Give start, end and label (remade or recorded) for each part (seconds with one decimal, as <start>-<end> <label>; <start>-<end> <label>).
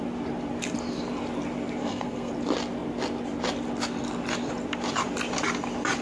0.0-1.8 recorded; 1.8-2.3 remade; 2.3-6.0 recorded